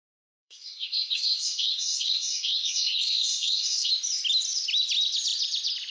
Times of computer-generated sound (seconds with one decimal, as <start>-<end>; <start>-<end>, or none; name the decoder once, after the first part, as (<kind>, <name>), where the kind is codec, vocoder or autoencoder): 0.4-3.9 (codec, SNAC)